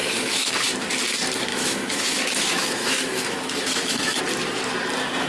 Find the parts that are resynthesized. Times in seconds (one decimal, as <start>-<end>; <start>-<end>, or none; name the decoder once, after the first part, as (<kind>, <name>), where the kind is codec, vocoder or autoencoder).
0.0-0.5 (autoencoder, DAC-VAE); 1.5-4.2